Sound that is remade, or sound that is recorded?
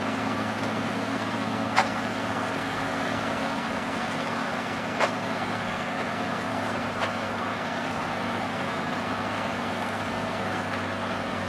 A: remade